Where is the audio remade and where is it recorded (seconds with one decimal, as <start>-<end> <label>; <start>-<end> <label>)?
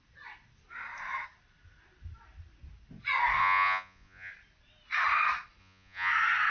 0.0-3.4 recorded; 3.4-4.3 remade; 4.3-5.6 recorded; 5.6-6.1 remade; 6.1-6.5 recorded